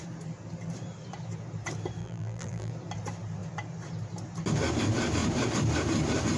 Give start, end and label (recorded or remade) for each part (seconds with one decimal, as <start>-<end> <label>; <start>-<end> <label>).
0.0-2.0 recorded; 2.0-2.7 remade; 2.7-6.4 recorded